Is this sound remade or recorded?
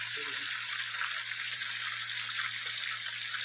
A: remade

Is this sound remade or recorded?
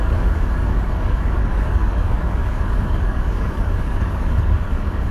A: remade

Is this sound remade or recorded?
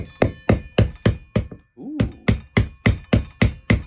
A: recorded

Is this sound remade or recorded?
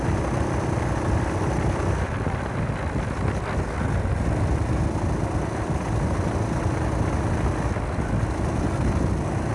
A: recorded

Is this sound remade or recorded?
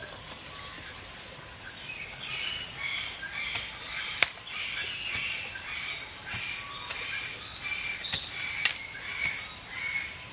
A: recorded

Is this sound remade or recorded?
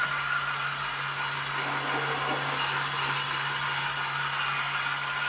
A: recorded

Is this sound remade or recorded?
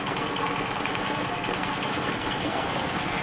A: remade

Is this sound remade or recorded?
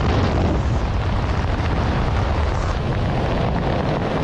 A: recorded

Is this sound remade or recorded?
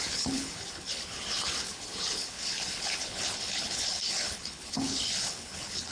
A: remade